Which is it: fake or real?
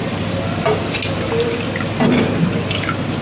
real